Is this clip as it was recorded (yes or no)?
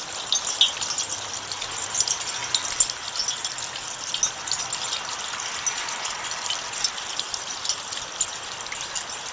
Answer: yes